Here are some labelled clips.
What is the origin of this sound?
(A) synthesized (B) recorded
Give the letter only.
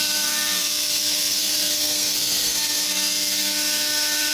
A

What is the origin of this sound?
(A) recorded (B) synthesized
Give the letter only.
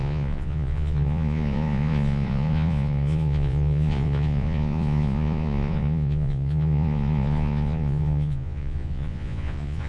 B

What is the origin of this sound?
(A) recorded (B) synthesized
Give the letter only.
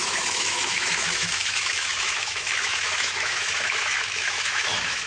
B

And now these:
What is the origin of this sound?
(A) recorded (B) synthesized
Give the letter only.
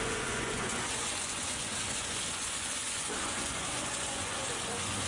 B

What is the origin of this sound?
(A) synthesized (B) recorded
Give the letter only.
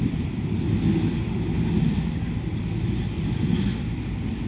B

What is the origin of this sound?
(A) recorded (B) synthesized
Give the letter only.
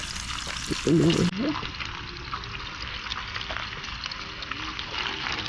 A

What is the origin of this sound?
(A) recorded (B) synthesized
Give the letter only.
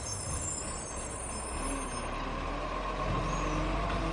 A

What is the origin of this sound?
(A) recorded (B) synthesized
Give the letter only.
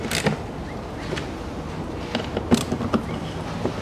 A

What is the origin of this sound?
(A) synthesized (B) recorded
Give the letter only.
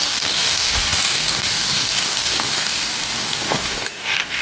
A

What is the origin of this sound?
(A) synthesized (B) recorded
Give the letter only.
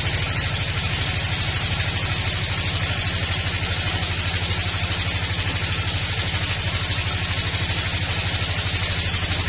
B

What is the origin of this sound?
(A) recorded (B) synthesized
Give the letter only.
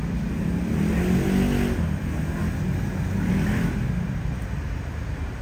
A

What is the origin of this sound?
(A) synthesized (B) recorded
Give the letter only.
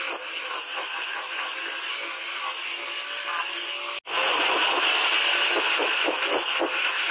B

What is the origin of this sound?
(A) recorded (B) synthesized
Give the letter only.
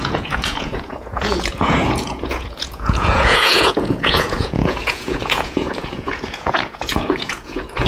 B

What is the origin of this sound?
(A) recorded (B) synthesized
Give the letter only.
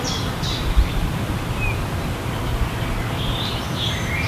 A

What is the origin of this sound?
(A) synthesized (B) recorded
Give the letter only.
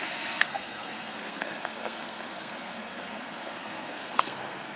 A